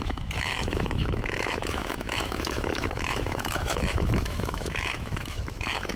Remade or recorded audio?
remade